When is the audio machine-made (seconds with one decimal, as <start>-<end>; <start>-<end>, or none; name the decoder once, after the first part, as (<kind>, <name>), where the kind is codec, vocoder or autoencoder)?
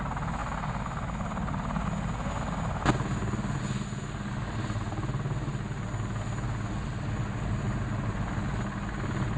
none